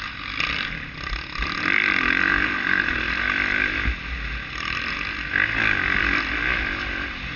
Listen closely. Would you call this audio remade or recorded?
recorded